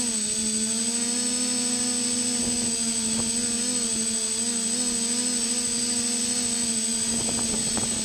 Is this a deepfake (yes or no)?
no